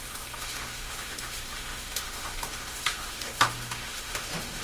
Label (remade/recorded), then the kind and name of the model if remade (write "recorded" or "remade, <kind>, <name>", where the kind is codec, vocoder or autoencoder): remade, autoencoder, DAC-VAE